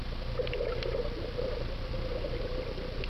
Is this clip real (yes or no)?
yes